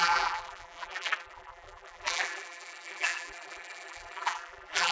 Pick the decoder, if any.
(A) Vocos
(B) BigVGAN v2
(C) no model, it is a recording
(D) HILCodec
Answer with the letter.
B